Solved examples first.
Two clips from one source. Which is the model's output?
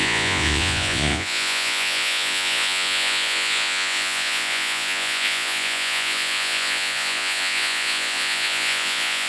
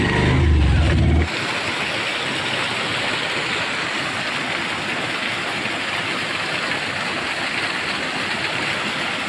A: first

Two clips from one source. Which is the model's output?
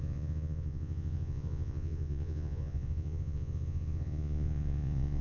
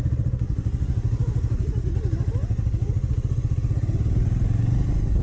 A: first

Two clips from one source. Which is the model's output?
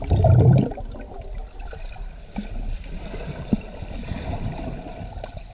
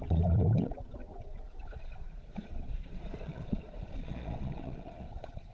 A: second